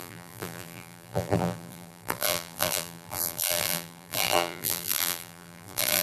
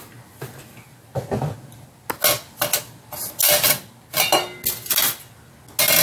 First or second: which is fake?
first